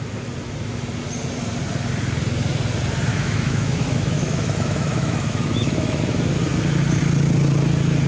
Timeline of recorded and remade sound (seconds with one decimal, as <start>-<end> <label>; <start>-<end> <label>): 0.0-3.1 recorded; 3.1-6.0 remade; 6.0-8.1 recorded